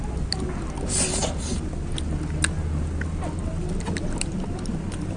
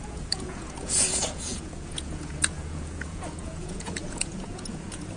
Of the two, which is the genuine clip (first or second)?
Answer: first